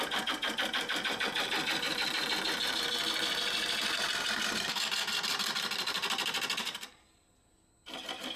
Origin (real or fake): real